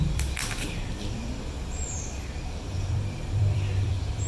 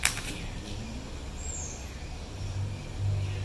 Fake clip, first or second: first